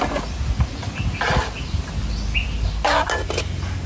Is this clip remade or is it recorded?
recorded